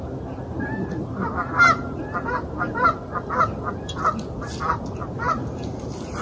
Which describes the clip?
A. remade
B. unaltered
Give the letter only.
B